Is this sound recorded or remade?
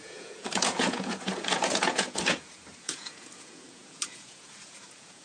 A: remade